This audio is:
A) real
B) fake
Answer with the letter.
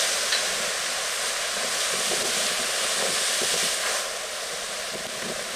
A